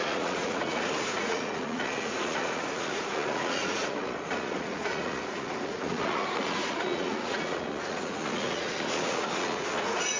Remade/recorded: remade